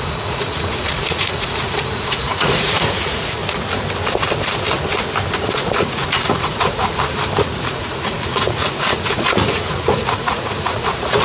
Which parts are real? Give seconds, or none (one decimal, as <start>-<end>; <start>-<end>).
3.4-5.4; 6.8-7.4